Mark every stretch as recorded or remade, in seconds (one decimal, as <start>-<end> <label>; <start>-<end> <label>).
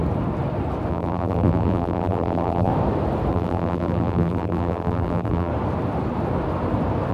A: 0.0-0.9 recorded; 0.9-2.7 remade; 2.7-3.3 recorded; 3.3-5.5 remade; 5.5-7.1 recorded